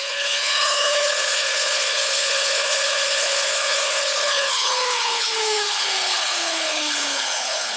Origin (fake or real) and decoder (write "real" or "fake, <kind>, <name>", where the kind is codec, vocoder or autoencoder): fake, codec, HILCodec